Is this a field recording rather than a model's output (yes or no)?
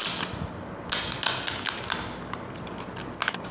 yes